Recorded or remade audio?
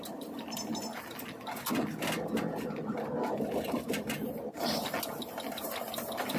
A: recorded